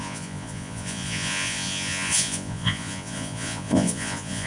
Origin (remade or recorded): remade